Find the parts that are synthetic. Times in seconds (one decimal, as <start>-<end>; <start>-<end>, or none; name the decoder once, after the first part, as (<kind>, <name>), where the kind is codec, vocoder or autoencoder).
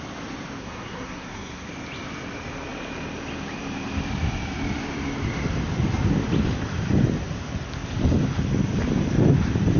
0.6-1.7 (codec, SNAC)